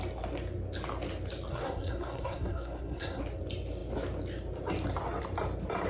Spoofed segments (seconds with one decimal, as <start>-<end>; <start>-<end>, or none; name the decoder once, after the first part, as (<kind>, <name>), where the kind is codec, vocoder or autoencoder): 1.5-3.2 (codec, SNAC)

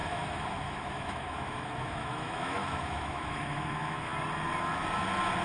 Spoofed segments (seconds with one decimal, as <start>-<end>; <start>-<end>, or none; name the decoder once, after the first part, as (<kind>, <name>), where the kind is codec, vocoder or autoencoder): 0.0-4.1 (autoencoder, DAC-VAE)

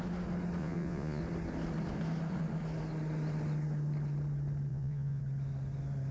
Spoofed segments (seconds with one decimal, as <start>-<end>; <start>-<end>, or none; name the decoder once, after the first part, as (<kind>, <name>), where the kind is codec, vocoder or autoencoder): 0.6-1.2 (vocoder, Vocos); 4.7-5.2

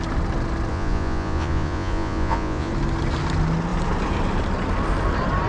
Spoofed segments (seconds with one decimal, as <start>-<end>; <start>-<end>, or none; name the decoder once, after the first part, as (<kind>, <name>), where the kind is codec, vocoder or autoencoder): 0.7-2.7 (vocoder, Vocos)